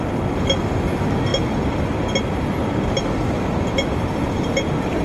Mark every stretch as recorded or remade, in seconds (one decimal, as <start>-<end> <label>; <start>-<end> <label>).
0.0-5.0 recorded